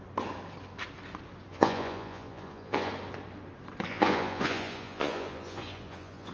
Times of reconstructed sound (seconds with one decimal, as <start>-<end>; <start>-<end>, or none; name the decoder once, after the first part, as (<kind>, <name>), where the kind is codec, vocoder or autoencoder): 1.5-2.9 (vocoder, Vocos); 3.9-6.3